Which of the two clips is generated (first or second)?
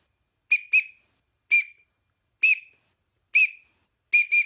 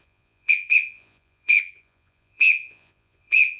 second